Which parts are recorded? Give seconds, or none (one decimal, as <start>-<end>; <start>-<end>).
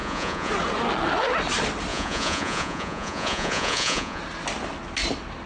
0.5-1.9; 4.2-5.5